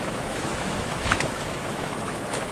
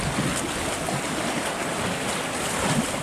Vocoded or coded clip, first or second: first